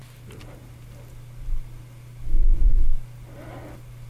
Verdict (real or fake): real